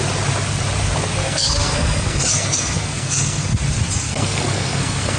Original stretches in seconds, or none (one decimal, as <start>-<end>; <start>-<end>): 0.0-1.2; 3.6-4.0